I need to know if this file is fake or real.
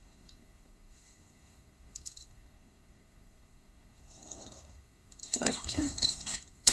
fake